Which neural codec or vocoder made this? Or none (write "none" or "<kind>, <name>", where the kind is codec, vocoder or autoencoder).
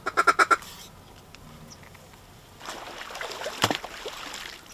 none